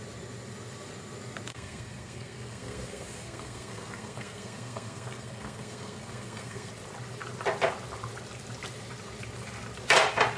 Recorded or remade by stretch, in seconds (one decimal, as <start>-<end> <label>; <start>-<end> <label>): 0.0-1.5 recorded; 1.5-6.7 remade; 6.7-10.4 recorded